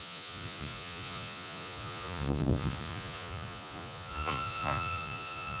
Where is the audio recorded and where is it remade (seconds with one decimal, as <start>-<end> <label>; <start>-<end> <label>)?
0.0-5.6 remade